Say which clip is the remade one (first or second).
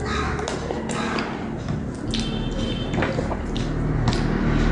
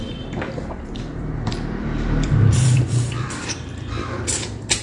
second